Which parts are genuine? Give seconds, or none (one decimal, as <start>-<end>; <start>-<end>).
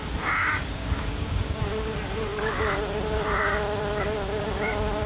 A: 0.0-0.4; 1.6-5.1